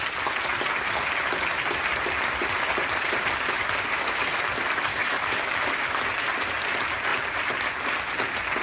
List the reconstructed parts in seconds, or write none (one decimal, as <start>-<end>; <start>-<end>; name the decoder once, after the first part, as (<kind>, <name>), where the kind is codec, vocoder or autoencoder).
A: 4.9-6.0 (autoencoder, DAC-VAE)